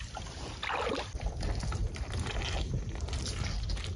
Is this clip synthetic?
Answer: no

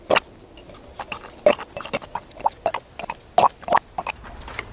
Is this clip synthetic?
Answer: no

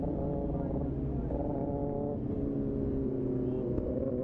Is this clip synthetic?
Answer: no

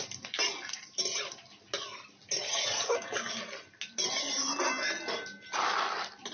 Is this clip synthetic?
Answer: no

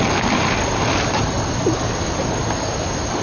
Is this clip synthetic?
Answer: no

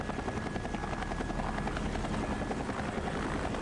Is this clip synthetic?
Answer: no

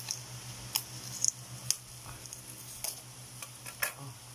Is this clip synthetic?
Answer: no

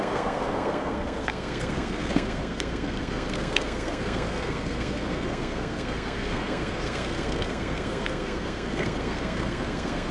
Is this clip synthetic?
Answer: yes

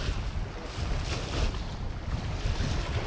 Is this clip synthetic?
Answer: no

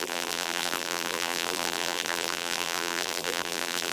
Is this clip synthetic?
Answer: yes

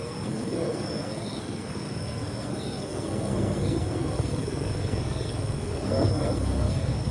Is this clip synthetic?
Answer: yes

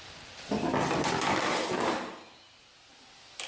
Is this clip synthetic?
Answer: no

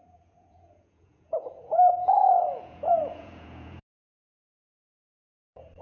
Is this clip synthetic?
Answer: yes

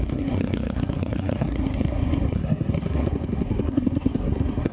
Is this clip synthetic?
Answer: yes